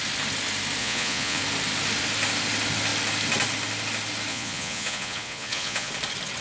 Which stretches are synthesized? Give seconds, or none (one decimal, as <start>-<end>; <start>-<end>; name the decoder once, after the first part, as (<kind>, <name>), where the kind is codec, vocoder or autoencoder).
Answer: 0.8-1.4 (vocoder, Vocos); 4.3-5.9